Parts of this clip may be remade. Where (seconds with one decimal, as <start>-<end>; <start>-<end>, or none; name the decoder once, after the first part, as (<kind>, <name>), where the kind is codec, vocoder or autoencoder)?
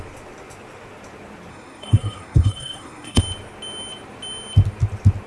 1.5-3.2 (codec, SNAC)